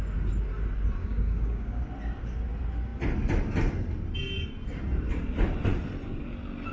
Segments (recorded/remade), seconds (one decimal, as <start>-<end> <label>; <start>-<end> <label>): 0.0-1.0 recorded; 1.0-1.8 remade; 1.8-6.7 recorded